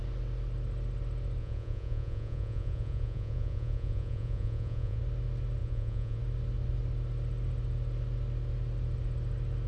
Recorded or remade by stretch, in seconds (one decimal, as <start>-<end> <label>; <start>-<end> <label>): 0.0-1.4 recorded; 1.4-5.0 remade; 5.0-5.6 recorded; 5.6-6.2 remade; 6.2-9.7 recorded